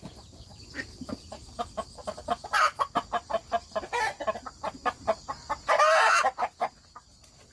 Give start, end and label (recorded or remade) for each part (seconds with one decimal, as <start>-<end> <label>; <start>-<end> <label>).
0.0-7.5 recorded